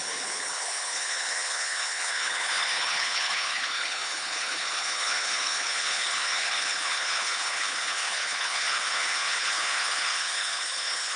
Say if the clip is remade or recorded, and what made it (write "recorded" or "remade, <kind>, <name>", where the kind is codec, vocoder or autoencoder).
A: remade, codec, HILCodec